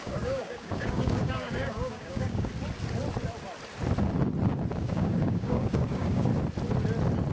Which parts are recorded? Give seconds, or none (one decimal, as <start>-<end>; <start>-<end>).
2.5-4.7; 6.3-7.3